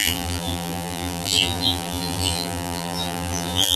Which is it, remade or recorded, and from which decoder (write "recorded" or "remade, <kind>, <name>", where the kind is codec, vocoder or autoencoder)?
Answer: remade, vocoder, BigVGAN v2